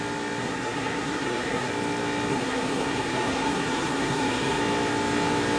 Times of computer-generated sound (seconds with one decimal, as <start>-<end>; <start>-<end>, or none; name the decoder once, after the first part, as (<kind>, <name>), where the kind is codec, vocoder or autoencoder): 0.4-1.7 (codec, SNAC); 2.3-4.6